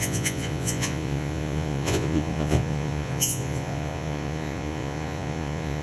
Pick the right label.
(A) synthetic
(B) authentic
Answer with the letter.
A